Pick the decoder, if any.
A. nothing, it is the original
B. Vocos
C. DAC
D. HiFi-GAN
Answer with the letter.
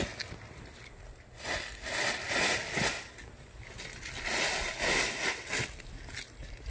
A